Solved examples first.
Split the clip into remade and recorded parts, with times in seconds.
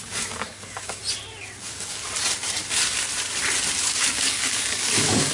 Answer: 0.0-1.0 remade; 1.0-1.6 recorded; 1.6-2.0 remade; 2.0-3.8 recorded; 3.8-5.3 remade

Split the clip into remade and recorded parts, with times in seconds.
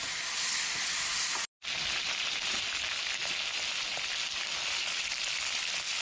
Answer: 0.0-6.0 recorded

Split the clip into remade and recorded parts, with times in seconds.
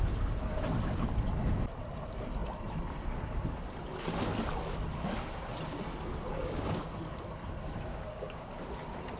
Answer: 0.0-6.3 recorded; 6.3-6.9 remade; 6.9-7.9 recorded; 7.9-8.5 remade; 8.5-9.2 recorded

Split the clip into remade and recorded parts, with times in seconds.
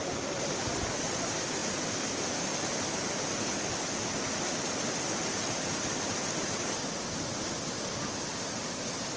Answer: 0.0-9.2 recorded